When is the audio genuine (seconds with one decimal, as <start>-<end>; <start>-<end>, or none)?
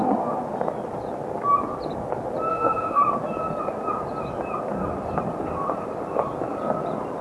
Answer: 0.0-2.5; 3.0-7.2